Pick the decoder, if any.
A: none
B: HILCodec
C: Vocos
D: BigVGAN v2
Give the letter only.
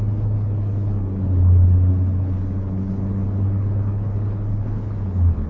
B